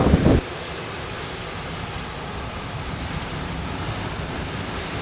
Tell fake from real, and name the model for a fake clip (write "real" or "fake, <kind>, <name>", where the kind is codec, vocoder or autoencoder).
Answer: fake, vocoder, BigVGAN v2